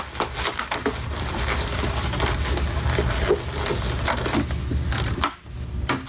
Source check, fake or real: real